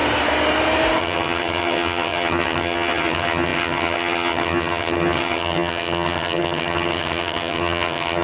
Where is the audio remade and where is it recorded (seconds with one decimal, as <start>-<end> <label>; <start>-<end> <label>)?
0.0-1.0 recorded; 1.0-8.2 remade